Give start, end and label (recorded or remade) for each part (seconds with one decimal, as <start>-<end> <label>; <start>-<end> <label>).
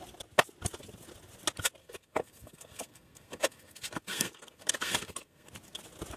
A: 0.0-1.8 recorded; 1.8-5.5 remade; 5.5-6.2 recorded